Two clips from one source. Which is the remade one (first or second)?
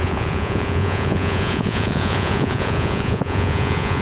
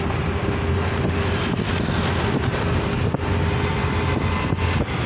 first